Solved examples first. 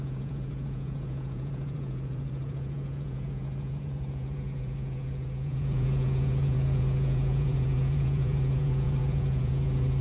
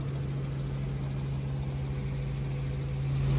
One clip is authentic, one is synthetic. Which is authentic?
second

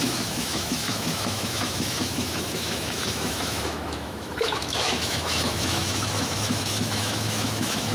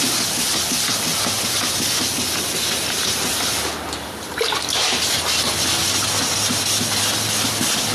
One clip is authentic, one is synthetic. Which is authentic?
second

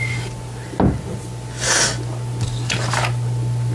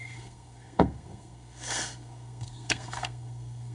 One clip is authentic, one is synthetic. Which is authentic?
first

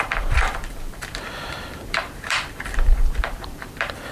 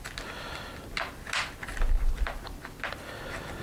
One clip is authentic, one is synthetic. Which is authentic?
second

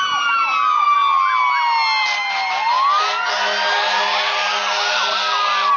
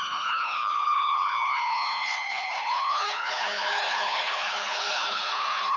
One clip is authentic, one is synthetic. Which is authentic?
first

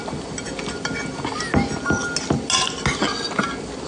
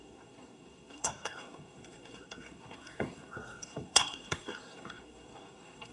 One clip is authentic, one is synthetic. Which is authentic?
first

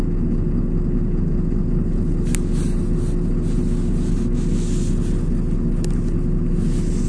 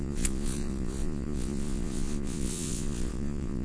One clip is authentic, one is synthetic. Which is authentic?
first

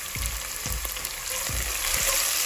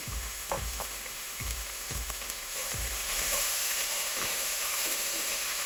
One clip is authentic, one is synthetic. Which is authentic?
first